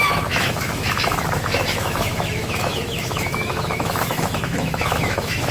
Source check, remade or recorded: remade